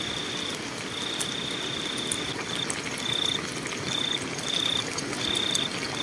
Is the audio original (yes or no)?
yes